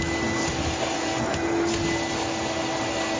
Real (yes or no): yes